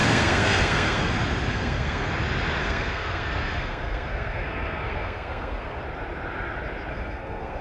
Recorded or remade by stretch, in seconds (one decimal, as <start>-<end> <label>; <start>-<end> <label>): 0.0-1.1 remade; 1.1-1.5 recorded; 1.5-2.1 remade; 2.1-2.6 recorded; 2.6-5.8 remade; 5.8-6.9 recorded; 6.9-7.6 remade